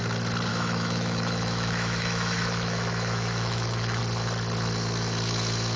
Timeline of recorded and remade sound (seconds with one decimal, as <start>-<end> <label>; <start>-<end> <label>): 0.0-0.5 recorded; 0.5-4.0 remade; 4.0-5.8 recorded